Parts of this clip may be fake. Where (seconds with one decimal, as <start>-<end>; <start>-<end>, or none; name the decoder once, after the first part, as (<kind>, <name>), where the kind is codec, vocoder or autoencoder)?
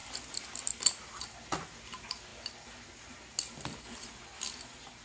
none